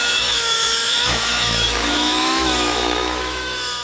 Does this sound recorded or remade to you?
remade